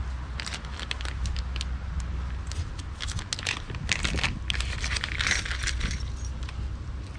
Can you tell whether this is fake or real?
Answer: real